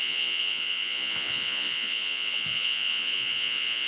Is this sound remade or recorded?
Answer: remade